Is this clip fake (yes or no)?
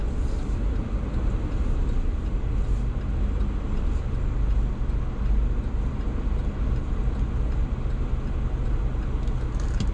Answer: no